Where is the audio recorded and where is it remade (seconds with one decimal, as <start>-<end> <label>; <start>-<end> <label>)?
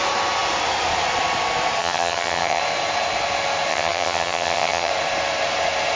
0.0-1.8 recorded; 1.8-2.6 remade; 2.6-3.7 recorded; 3.7-4.9 remade; 4.9-6.0 recorded